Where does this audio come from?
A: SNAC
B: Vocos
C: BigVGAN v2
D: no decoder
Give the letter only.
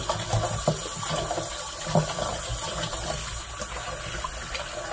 D